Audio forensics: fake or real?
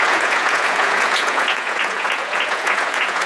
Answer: fake